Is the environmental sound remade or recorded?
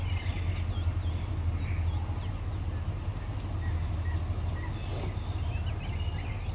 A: recorded